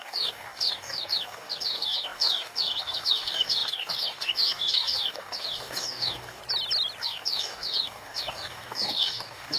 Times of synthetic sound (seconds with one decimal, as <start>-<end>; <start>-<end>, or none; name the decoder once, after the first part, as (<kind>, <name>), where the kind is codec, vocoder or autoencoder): 0.0-6.4 (codec, DAC); 7.0-9.6